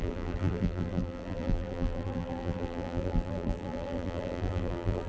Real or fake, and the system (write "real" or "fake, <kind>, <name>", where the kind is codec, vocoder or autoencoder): fake, vocoder, BigVGAN v2